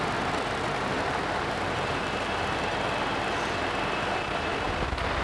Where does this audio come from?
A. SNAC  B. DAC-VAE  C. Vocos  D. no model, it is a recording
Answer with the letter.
D